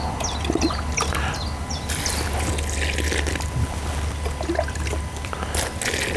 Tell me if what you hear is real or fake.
real